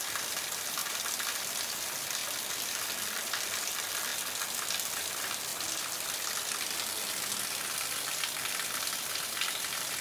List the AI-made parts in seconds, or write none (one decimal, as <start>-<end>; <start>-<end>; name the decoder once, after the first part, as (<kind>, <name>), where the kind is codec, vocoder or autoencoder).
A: 0.0-2.2 (vocoder, BigVGAN v2); 3.0-4.1; 4.9-5.5; 7.4-10.0